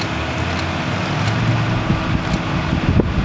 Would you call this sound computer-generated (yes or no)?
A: no